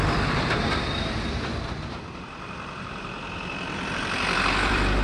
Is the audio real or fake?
fake